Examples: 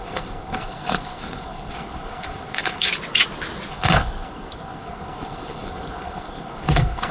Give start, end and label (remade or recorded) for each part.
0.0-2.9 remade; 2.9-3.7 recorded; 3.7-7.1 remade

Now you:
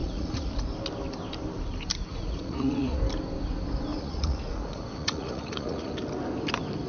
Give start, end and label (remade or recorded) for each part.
0.0-0.5 remade; 0.5-2.1 recorded; 2.1-3.0 remade; 3.0-3.9 recorded; 3.9-5.9 remade; 5.9-6.9 recorded

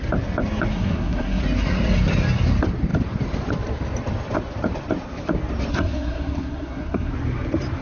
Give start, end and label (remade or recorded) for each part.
0.0-0.7 recorded; 0.7-1.4 remade; 1.4-5.7 recorded; 5.7-7.1 remade; 7.1-7.8 recorded

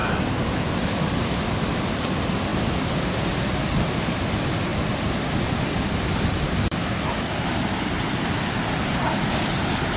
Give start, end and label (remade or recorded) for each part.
0.0-2.5 recorded; 2.5-3.8 remade; 3.8-4.7 recorded; 4.7-8.8 remade; 8.8-10.0 recorded

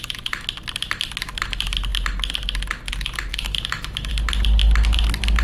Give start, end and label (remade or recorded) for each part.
0.0-3.3 recorded; 3.3-4.1 remade; 4.1-5.4 recorded

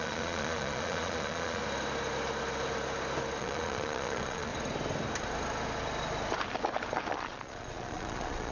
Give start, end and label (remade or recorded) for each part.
0.0-1.6 remade; 1.6-3.4 recorded; 3.4-4.5 remade; 4.5-7.1 recorded; 7.1-8.5 remade